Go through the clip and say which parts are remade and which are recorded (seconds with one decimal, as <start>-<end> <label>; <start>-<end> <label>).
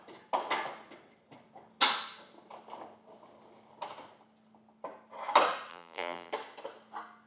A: 0.0-5.7 recorded; 5.7-6.3 remade; 6.3-7.3 recorded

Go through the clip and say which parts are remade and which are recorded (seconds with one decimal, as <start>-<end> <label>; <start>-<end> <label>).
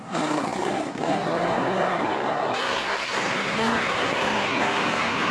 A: 0.0-5.3 remade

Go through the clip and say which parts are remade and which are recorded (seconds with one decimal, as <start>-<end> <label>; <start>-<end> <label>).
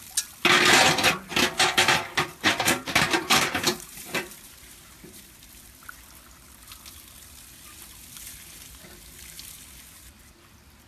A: 0.0-1.3 recorded; 1.3-5.2 remade; 5.2-10.9 recorded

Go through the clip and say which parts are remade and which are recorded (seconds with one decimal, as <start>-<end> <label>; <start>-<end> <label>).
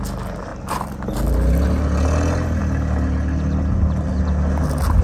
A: 0.0-5.0 recorded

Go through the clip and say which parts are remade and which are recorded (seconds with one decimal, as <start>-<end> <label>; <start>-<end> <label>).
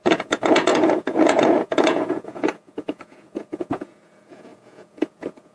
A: 0.0-5.5 remade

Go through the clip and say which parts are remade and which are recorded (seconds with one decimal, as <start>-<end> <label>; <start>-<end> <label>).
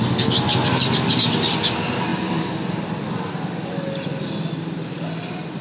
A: 0.0-5.6 recorded